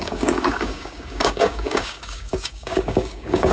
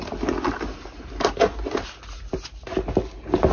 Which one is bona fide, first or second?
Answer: second